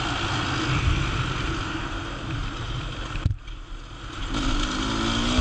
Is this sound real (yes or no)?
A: yes